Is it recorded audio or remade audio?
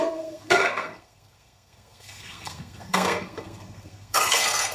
remade